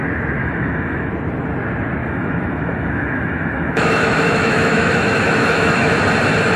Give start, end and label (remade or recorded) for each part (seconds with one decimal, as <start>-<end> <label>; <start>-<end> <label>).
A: 0.0-0.4 recorded; 0.4-1.1 remade; 1.1-2.0 recorded; 2.0-6.0 remade; 6.0-6.6 recorded